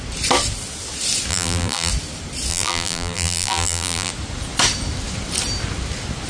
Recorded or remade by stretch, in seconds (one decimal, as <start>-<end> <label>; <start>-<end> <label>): 0.0-1.3 recorded; 1.3-1.9 remade; 1.9-2.5 recorded; 2.5-4.1 remade; 4.1-6.3 recorded